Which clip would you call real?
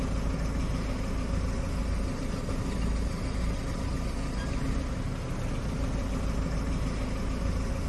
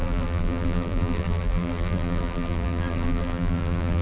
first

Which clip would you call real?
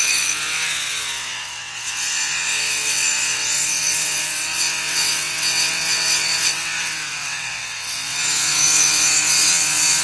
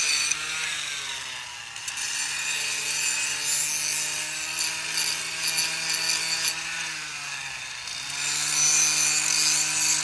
second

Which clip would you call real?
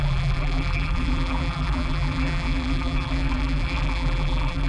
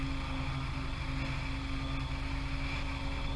second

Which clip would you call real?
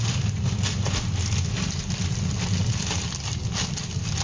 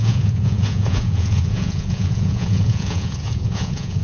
first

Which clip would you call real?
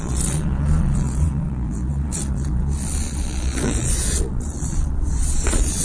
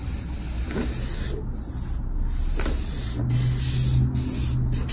second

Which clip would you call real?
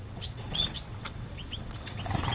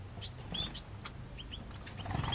second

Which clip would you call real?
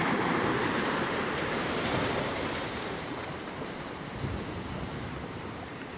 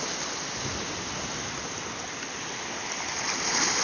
second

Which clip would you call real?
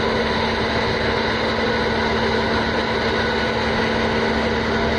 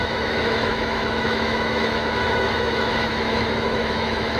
first